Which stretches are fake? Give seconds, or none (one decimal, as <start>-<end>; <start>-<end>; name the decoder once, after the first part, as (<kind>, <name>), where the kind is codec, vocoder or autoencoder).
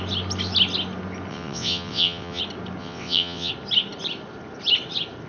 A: 1.3-2.4 (vocoder, WaveNeXt); 2.8-3.5